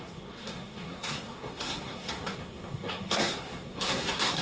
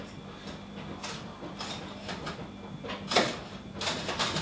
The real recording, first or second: second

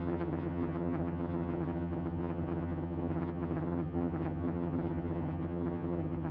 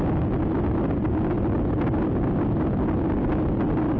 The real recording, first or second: second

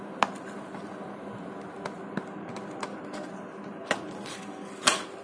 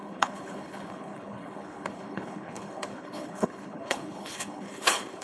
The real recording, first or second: first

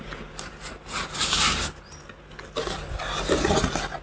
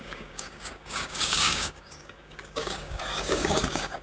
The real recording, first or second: first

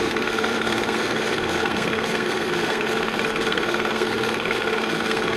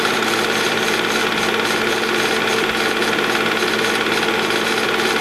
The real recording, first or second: second